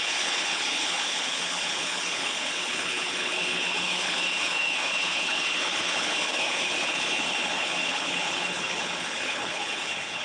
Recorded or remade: remade